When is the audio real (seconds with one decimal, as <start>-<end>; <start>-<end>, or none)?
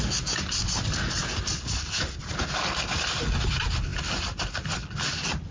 0.0-5.5